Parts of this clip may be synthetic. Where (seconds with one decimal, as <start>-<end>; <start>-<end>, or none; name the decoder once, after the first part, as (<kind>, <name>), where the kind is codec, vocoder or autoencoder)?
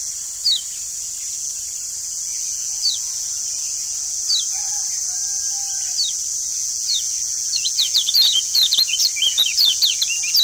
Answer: 2.3-3.3 (vocoder, Vocos); 6.5-10.0